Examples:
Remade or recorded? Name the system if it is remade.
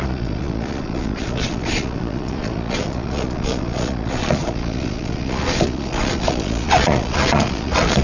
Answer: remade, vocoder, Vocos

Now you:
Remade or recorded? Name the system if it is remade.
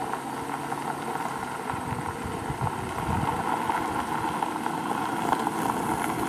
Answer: recorded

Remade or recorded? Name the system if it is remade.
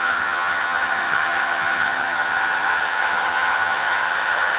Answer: remade, vocoder, HiFi-GAN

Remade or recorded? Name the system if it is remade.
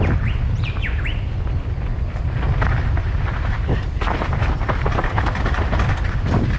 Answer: recorded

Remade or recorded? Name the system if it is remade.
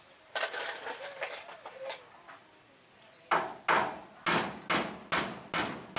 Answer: recorded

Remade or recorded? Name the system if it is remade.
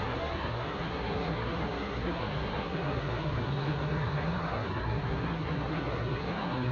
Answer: remade, codec, SNAC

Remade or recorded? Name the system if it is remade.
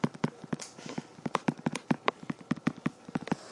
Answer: recorded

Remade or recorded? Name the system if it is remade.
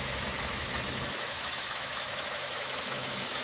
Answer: remade, autoencoder, DAC-VAE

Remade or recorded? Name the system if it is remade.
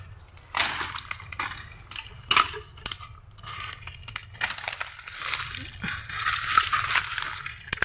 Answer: recorded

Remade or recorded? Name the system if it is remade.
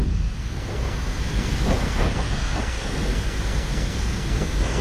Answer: remade, codec, SNAC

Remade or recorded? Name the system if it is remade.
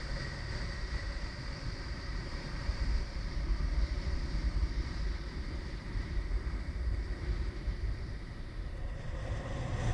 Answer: remade, vocoder, BigVGAN v2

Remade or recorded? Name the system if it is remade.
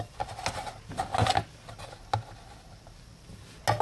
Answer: recorded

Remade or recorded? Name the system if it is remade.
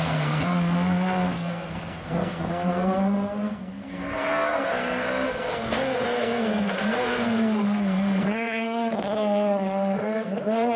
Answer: remade, codec, SNAC